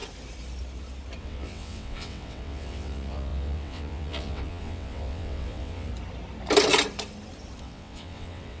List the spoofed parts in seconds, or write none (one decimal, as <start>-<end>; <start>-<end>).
1.2-5.9; 7.6-8.6